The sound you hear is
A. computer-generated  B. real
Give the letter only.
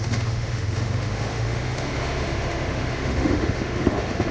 A